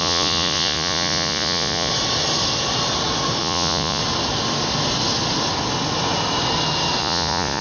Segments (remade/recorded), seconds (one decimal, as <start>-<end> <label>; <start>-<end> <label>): 0.0-1.9 remade; 1.9-3.4 recorded; 3.4-4.0 remade; 4.0-7.0 recorded; 7.0-7.6 remade